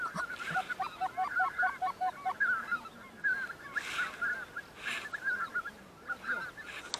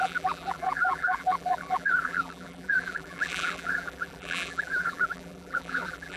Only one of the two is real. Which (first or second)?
first